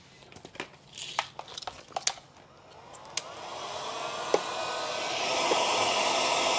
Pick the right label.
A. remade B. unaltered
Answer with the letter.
B